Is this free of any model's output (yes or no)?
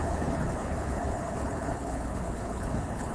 no